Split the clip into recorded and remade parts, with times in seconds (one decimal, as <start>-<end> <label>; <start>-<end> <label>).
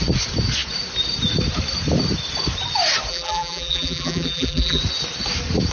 0.0-3.1 recorded; 3.1-4.8 remade; 4.8-5.7 recorded